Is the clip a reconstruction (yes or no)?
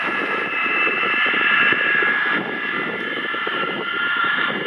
yes